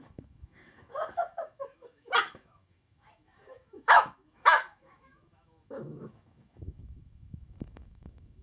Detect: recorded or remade remade